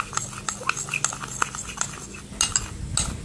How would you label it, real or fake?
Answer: real